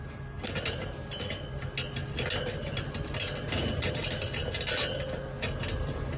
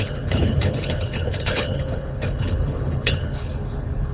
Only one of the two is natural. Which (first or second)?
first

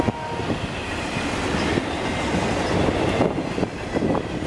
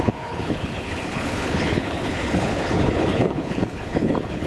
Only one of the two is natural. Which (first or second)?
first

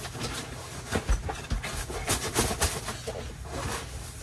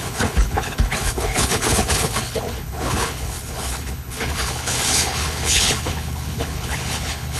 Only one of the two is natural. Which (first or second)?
first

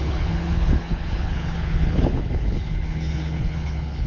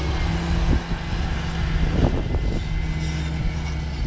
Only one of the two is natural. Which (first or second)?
second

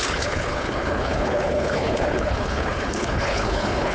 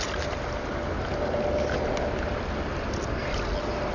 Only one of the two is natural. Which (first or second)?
second